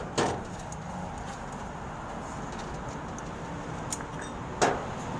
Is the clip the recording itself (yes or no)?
yes